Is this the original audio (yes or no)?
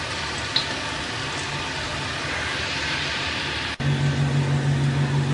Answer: yes